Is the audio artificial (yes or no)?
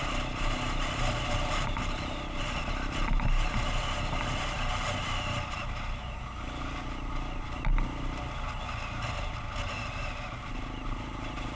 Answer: no